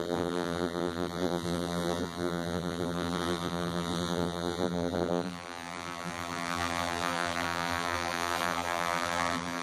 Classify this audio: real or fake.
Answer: fake